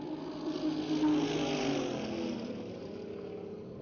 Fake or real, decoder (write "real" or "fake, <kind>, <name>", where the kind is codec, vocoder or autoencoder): real